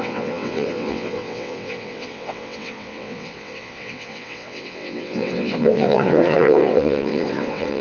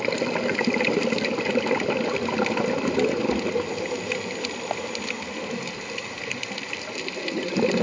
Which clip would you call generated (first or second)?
first